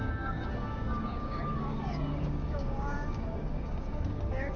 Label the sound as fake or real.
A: fake